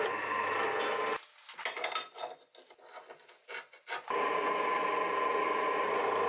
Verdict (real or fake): real